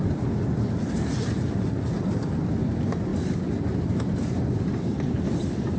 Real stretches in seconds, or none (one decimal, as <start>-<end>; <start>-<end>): 0.0-5.8